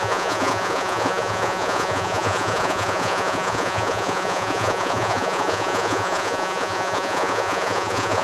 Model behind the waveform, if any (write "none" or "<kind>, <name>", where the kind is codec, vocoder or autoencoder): vocoder, Vocos